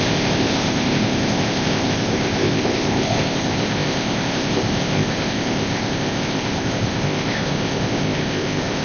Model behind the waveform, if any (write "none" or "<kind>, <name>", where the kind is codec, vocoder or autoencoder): codec, ZipCodec